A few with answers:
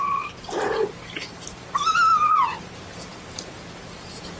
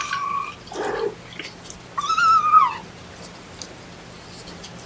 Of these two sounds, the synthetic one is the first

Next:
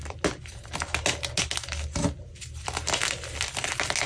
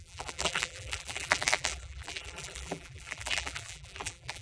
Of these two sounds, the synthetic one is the second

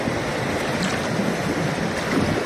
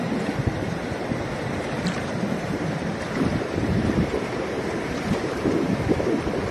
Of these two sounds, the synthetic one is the second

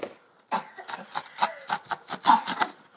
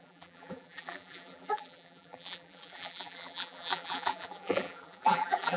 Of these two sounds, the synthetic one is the second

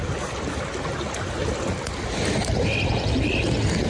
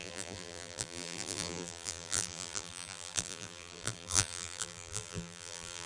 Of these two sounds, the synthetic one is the second